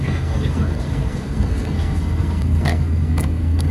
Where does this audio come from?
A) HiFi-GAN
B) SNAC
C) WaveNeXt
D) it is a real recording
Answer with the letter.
B